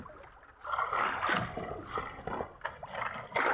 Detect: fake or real real